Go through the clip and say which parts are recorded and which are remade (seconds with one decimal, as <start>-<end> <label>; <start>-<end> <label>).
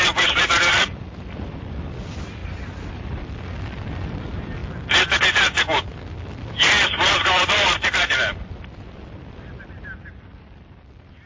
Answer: 0.0-2.4 remade; 2.4-2.9 recorded; 2.9-4.6 remade; 4.6-6.4 recorded; 6.4-11.3 remade